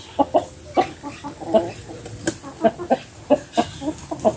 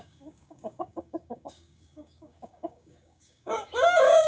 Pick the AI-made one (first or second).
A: second